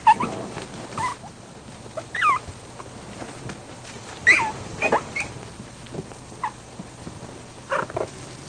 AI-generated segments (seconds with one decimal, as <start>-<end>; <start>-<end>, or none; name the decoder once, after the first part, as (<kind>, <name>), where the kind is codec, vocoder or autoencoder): none